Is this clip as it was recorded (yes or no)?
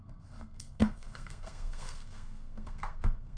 no